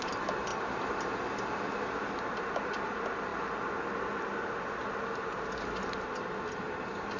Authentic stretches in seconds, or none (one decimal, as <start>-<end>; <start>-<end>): 0.0-7.2